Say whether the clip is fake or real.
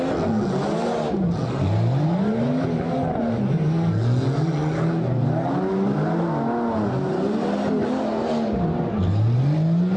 real